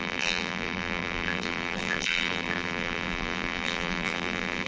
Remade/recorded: remade